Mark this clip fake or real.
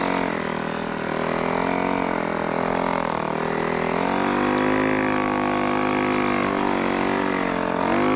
real